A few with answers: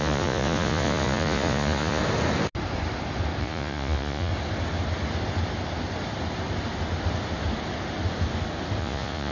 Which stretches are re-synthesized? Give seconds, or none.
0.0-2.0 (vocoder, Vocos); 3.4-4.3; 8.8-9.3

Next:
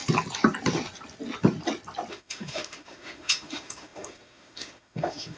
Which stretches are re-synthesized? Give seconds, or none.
2.1-5.4 (autoencoder, DAC-VAE)

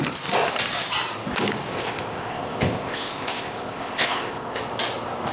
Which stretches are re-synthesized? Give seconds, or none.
1.7-4.6 (codec, ZipCodec)

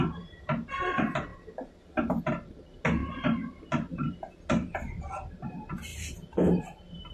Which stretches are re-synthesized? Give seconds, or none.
1.3-2.2 (vocoder, BigVGAN v2); 3.0-4.1; 5.9-6.6

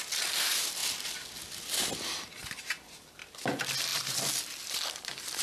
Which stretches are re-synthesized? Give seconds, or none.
3.9-5.0 (vocoder, BigVGAN v2)

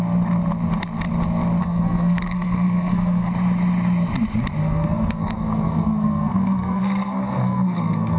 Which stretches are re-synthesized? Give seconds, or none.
1.6-3.3 (codec, SNAC); 4.6-8.2

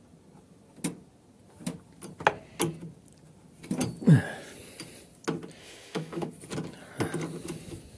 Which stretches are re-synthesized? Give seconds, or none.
5.6-6.3 (autoencoder, DAC-VAE)